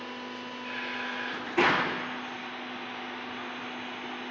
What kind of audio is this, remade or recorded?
recorded